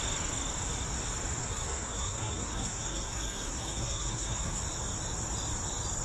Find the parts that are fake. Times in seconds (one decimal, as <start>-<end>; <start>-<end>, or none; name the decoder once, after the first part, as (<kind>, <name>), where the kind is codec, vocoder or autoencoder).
1.4-4.6 (codec, SNAC)